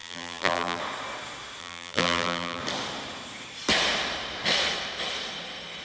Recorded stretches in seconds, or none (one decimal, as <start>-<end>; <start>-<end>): 0.8-1.6; 2.6-5.8